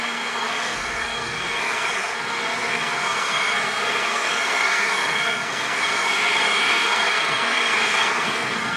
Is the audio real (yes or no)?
no